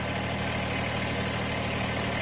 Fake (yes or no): no